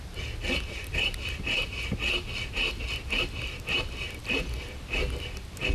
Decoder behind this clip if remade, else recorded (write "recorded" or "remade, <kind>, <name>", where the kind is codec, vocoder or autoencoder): recorded